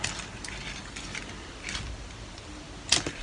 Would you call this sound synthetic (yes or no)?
no